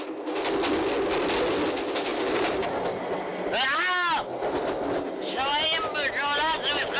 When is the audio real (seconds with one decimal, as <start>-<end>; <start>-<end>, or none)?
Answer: 0.0-2.1; 2.7-7.0